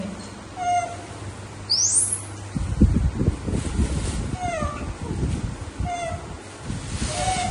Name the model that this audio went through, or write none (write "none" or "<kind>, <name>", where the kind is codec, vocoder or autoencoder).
none